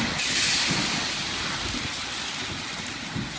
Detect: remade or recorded recorded